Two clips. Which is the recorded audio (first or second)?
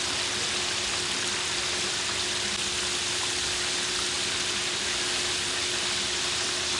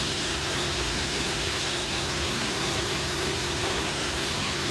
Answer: first